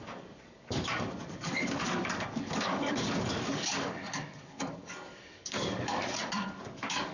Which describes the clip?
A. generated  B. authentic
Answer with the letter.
A